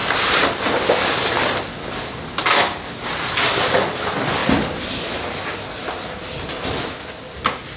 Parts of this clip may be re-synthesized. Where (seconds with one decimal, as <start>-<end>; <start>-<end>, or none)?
0.0-0.6; 4.4-7.8